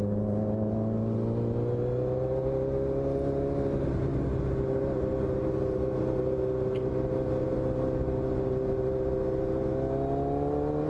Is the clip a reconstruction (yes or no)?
no